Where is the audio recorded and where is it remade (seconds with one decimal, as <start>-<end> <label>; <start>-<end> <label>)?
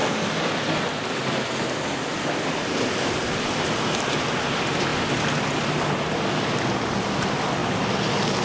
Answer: 0.0-8.4 recorded